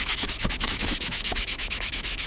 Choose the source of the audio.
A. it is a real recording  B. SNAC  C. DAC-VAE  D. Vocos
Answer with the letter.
C